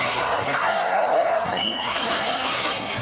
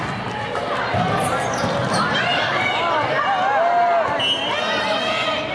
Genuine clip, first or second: second